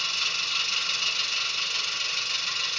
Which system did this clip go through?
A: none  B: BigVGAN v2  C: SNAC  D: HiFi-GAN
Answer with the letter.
A